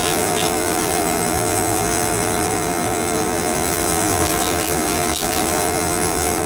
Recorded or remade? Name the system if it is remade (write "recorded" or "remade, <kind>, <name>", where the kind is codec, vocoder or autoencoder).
remade, vocoder, BigVGAN v2